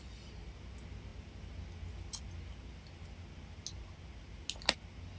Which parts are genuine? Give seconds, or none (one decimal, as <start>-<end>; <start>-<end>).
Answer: 0.0-5.2